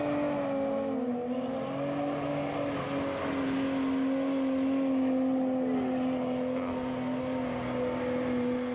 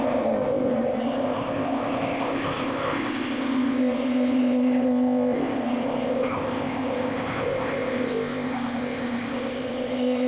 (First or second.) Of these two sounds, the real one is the first